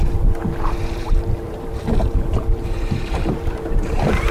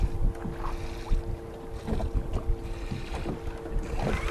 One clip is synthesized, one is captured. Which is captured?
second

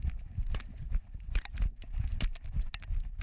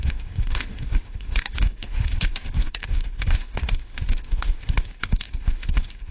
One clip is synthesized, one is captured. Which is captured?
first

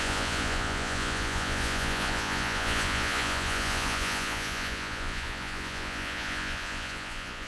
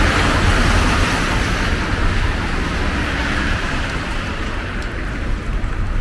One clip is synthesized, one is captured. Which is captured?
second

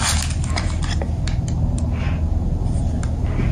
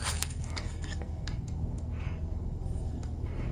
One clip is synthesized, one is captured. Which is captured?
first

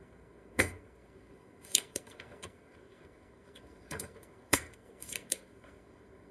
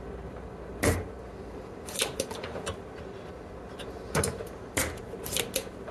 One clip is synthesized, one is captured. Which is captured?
second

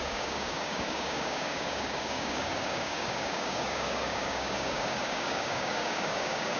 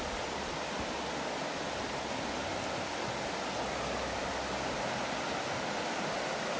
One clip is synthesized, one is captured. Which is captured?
second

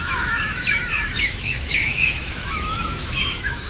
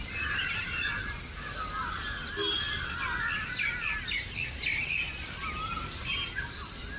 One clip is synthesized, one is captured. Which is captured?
second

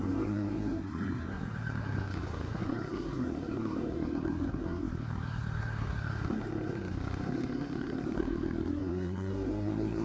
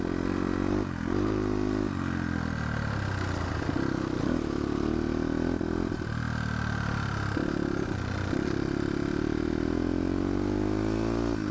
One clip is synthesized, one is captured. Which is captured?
second